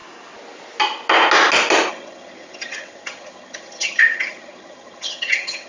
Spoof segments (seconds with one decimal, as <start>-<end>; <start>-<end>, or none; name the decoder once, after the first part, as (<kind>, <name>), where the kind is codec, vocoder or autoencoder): 1.9-5.7 (vocoder, HiFi-GAN)